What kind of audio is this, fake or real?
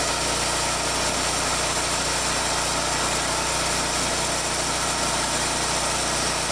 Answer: real